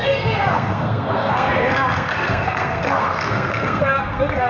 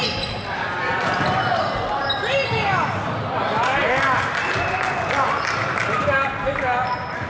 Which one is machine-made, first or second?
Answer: first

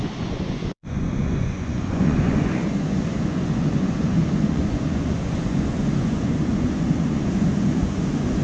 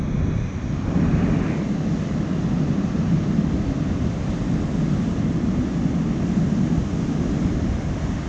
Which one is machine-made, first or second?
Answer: first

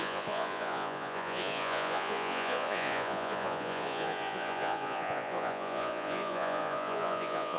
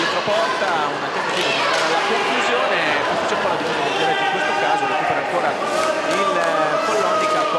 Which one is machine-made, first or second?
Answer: first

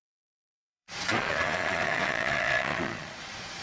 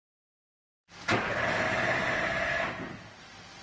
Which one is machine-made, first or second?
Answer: first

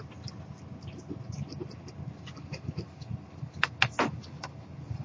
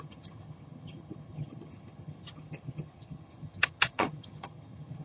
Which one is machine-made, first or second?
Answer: second